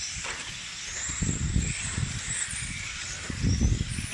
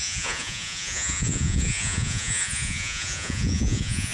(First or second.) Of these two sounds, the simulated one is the second